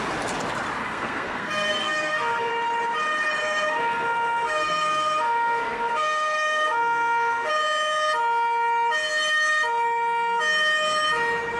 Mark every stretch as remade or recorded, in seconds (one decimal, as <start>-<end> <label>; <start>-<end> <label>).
0.0-0.8 recorded; 0.8-2.5 remade; 2.5-3.4 recorded; 3.4-7.5 remade; 7.5-11.6 recorded